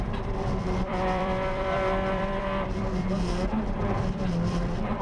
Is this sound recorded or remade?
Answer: remade